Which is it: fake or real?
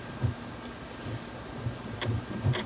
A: real